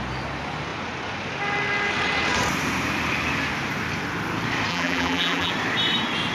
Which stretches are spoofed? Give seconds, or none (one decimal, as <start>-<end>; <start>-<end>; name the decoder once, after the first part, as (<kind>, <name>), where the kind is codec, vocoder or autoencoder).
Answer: 4.7-5.5 (vocoder, BigVGAN v2)